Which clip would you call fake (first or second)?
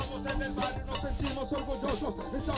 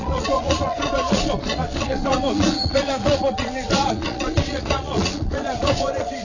second